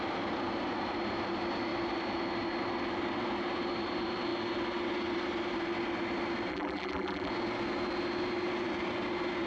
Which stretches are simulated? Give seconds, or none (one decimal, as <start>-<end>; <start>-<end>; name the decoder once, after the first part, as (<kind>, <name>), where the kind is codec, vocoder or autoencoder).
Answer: 6.5-7.3 (vocoder, BigVGAN v2)